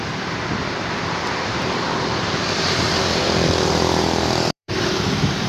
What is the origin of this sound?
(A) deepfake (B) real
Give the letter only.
A